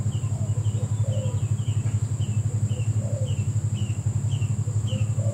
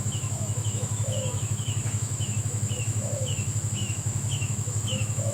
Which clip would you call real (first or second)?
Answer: first